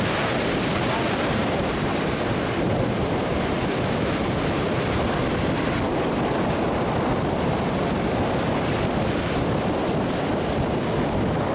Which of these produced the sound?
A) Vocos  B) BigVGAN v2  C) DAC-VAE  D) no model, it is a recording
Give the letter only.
D